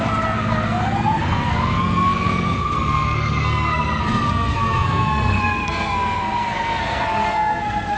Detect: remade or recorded remade